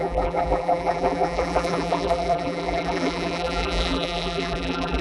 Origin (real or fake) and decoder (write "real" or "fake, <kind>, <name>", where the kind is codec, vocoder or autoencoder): fake, vocoder, BigVGAN v2